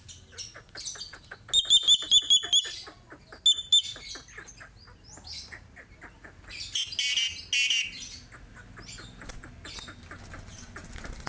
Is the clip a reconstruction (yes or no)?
no